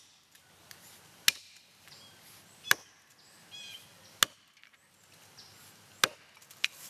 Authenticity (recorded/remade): recorded